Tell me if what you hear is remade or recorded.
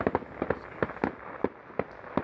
recorded